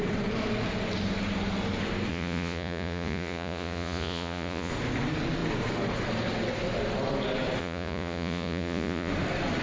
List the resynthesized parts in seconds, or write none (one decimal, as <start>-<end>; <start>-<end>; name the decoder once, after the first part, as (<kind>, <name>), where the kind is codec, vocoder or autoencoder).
2.1-4.7 (vocoder, Vocos); 7.6-9.1